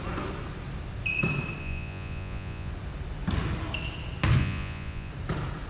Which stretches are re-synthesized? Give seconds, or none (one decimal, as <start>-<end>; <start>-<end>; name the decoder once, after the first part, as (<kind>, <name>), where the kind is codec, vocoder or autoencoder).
1.6-2.7 (vocoder, Vocos); 4.4-5.1